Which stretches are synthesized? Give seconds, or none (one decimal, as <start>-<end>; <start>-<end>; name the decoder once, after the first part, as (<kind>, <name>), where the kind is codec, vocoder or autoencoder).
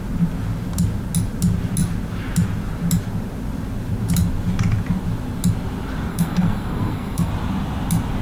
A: 6.1-7.3 (codec, SNAC)